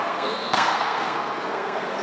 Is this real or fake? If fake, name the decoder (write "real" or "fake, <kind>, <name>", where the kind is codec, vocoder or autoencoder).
fake, codec, SNAC